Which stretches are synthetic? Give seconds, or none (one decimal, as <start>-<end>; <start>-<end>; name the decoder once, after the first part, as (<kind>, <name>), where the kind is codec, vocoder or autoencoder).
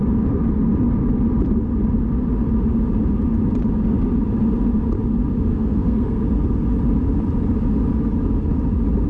5.5-6.2 (codec, SNAC)